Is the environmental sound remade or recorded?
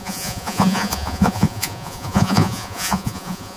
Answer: remade